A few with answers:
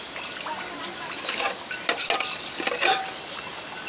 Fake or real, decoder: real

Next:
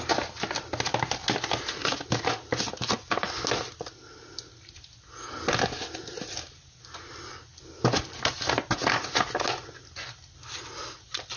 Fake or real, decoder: real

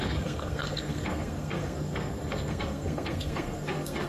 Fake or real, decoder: fake, codec, SNAC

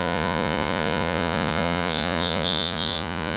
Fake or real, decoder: fake, vocoder, Vocos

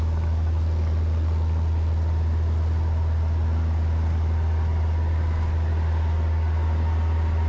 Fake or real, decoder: real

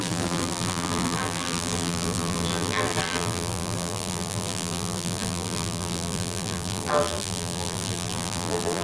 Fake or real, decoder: fake, vocoder, BigVGAN v2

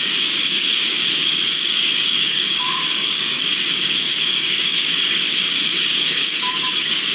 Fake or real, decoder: fake, codec, DAC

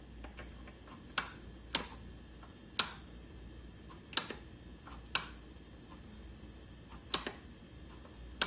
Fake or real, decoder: real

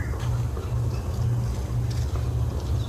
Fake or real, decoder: real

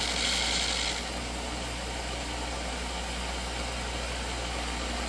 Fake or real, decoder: real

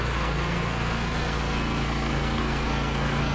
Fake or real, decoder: fake, codec, SNAC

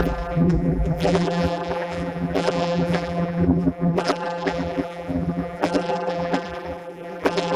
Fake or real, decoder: fake, vocoder, BigVGAN v2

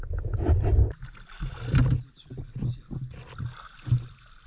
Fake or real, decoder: real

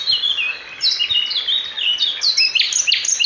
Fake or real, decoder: real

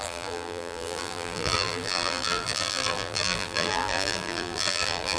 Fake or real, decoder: fake, vocoder, BigVGAN v2